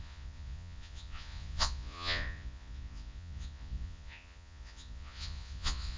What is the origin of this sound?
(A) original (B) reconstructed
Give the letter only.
B